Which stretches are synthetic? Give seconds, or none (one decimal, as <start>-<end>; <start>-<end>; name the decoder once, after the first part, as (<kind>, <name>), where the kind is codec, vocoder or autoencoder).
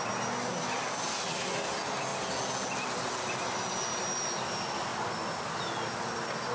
none